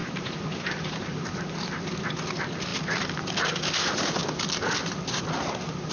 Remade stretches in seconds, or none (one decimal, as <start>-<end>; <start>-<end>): 0.0-1.8